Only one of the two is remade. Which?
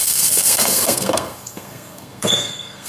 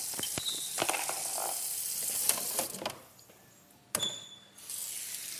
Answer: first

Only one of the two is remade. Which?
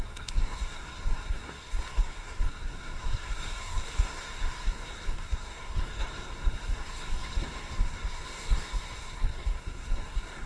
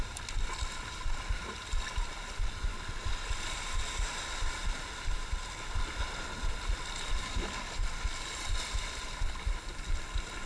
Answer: first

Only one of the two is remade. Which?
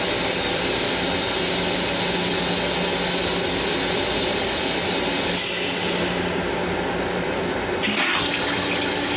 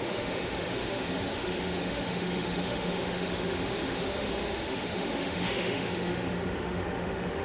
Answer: second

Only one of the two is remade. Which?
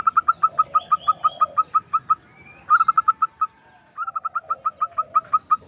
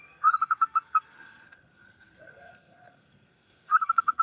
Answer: second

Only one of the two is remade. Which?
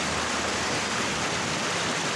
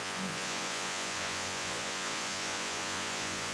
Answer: second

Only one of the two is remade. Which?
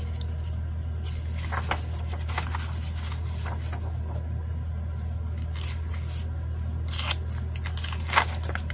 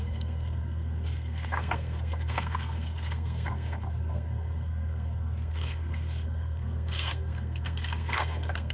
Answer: second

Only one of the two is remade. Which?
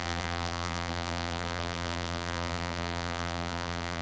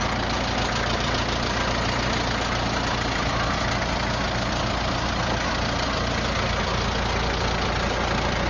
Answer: first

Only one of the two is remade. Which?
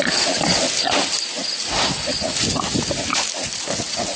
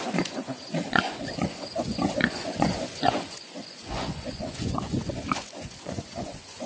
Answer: second